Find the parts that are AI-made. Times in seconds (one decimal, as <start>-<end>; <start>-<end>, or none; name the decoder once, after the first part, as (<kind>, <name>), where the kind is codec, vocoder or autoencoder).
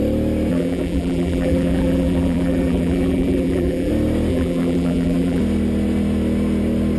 0.5-3.9 (vocoder, BigVGAN v2); 4.3-5.4